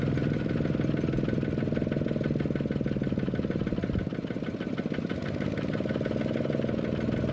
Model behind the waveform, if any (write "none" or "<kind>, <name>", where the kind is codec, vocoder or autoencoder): none